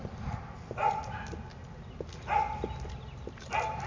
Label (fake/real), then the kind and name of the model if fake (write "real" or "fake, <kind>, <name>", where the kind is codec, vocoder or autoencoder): real